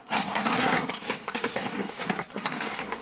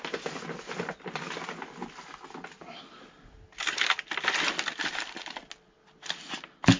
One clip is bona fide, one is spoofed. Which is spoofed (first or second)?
first